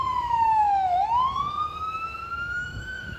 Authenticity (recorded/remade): remade